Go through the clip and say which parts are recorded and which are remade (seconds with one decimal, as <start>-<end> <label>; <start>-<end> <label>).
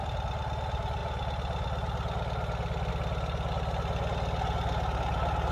0.0-5.5 recorded